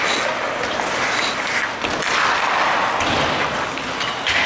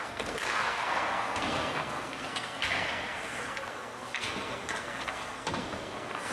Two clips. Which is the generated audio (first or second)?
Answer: second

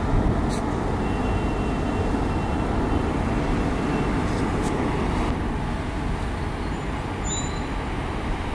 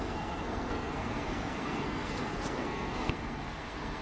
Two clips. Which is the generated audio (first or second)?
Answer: second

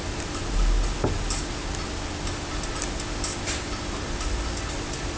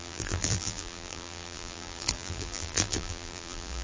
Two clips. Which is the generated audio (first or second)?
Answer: second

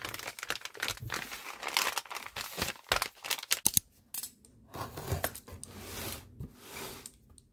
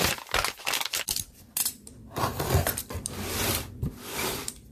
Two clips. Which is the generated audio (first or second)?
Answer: second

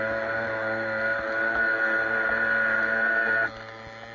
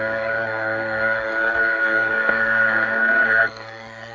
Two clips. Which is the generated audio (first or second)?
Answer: second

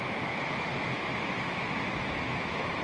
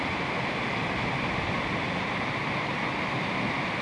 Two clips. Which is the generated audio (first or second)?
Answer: first